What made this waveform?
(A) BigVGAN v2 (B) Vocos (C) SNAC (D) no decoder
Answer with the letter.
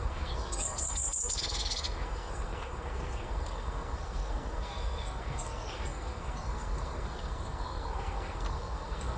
C